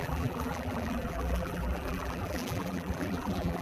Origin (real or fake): fake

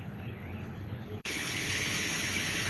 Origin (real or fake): fake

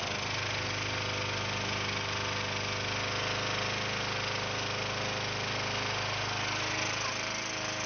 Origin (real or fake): real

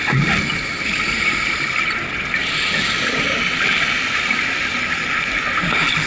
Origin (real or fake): real